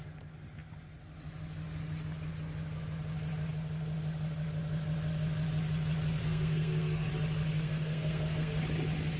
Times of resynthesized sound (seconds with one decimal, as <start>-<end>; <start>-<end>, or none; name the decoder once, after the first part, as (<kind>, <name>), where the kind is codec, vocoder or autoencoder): 6.2-7.1 (codec, SNAC); 7.5-8.6